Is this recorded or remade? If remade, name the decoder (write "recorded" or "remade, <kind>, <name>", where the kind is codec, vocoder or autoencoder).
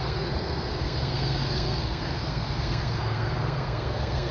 remade, codec, SNAC